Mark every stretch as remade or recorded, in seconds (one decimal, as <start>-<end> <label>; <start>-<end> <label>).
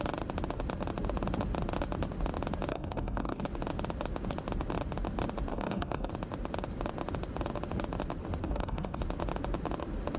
0.0-2.7 recorded; 2.7-3.4 remade; 3.4-5.5 recorded; 5.5-6.1 remade; 6.1-8.4 recorded; 8.4-9.0 remade; 9.0-10.2 recorded